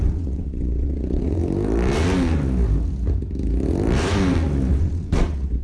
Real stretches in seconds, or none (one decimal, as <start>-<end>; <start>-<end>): 1.4-4.7